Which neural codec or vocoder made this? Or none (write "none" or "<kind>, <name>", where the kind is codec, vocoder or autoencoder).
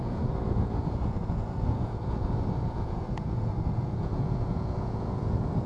vocoder, Vocos